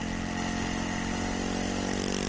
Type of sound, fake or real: real